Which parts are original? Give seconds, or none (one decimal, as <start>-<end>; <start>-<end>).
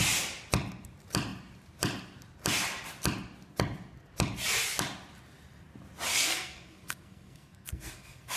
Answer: 0.0-6.1